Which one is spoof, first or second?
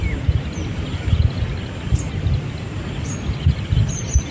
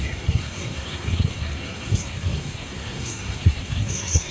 second